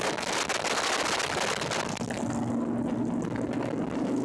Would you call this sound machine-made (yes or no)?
no